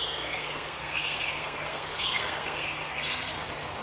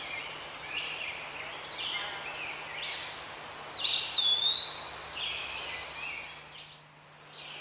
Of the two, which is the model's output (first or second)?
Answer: first